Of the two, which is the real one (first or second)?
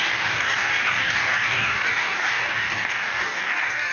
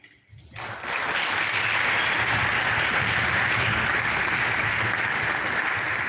second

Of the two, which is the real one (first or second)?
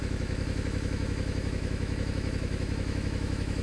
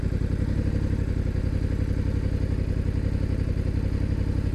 second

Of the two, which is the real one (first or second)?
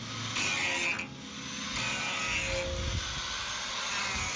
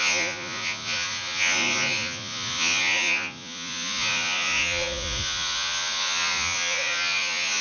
first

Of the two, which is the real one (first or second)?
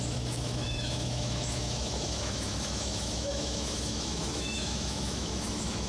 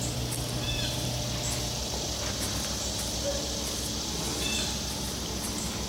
second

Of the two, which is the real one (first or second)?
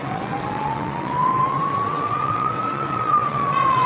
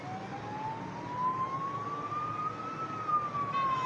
second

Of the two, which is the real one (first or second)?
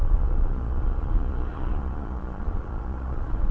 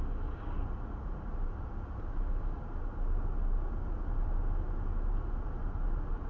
second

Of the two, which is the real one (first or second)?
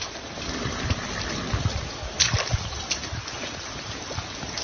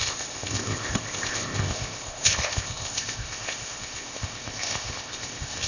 first